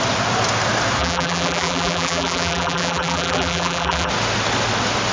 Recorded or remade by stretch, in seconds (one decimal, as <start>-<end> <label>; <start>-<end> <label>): 0.0-1.0 recorded; 1.0-4.1 remade; 4.1-5.1 recorded